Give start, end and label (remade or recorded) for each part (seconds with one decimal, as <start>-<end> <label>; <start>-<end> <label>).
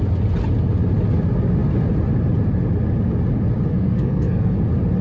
0.0-3.7 recorded; 3.7-4.6 remade; 4.6-5.0 recorded